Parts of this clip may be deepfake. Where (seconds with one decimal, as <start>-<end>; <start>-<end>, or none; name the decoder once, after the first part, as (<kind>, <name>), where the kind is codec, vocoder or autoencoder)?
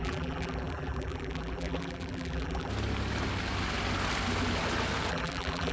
0.0-2.7 (vocoder, BigVGAN v2); 5.1-5.7